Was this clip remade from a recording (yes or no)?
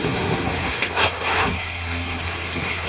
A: yes